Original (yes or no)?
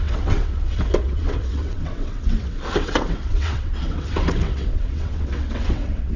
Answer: no